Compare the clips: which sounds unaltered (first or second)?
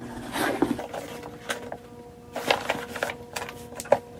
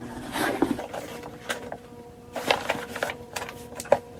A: first